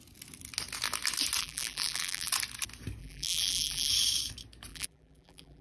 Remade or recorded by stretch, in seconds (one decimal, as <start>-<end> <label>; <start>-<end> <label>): 0.0-1.4 recorded; 1.4-2.3 remade; 2.3-3.0 recorded; 3.0-3.9 remade; 3.9-4.7 recorded; 4.7-5.6 remade